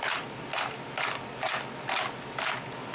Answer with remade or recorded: recorded